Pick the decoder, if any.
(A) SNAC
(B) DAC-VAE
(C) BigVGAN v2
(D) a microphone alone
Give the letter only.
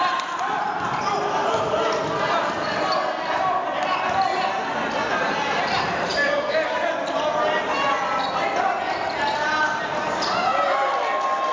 D